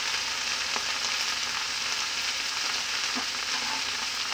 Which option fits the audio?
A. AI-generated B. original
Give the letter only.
B